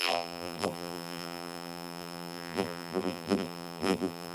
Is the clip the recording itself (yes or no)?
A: no